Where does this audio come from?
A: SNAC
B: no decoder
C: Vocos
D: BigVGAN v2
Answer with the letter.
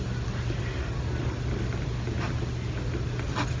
B